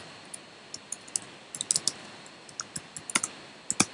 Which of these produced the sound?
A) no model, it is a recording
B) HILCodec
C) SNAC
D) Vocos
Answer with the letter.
A